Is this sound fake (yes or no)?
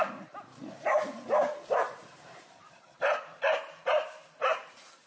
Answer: yes